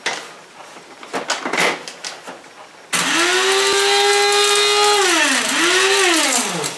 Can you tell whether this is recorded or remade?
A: recorded